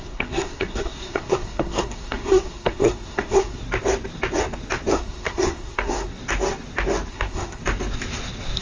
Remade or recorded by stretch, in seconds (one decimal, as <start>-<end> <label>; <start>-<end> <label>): 0.0-3.6 remade; 3.6-4.9 recorded; 4.9-6.1 remade; 6.1-7.1 recorded; 7.1-7.6 remade; 7.6-8.6 recorded